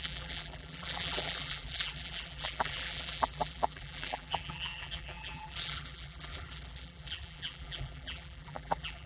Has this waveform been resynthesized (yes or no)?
yes